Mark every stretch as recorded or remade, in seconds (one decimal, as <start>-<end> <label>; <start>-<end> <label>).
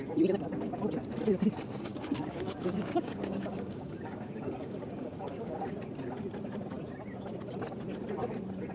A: 0.0-1.9 recorded; 1.9-5.7 remade; 5.7-8.7 recorded